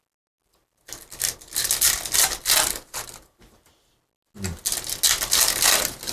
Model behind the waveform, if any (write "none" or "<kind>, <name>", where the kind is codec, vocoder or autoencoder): none